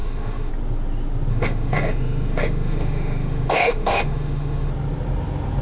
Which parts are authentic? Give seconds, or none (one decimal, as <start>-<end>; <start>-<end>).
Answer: 0.5-1.3; 4.7-5.6